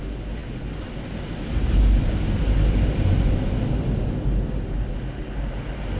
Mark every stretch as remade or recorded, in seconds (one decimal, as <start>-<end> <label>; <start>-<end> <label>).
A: 0.0-6.0 recorded